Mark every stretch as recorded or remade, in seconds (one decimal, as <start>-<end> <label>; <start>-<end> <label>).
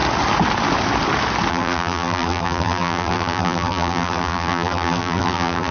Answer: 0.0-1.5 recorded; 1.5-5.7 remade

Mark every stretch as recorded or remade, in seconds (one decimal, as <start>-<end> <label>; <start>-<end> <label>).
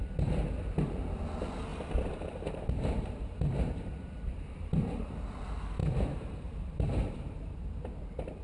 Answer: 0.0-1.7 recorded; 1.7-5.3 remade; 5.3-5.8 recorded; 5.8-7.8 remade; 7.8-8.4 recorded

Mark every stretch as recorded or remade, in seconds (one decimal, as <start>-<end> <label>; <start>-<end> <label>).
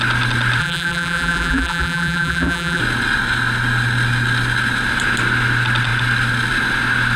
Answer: 0.0-0.6 recorded; 0.6-2.8 remade; 2.8-7.2 recorded